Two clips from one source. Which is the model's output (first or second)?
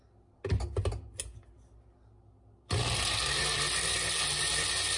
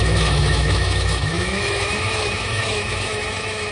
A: second